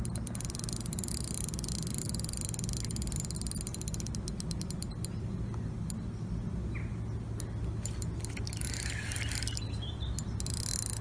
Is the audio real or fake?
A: real